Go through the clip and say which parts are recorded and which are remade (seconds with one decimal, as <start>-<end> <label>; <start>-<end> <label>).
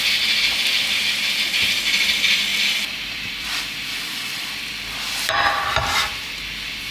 0.0-2.5 recorded; 2.5-6.9 remade